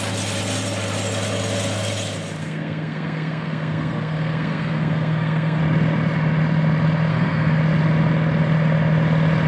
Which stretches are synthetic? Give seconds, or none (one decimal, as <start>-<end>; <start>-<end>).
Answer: 2.4-5.6; 7.1-7.6